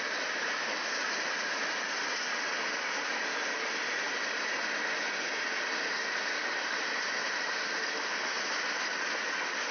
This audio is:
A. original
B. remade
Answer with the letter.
A